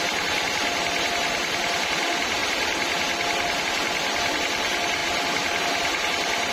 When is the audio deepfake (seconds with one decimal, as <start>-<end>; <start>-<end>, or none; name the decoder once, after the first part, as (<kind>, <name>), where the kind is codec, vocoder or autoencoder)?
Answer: none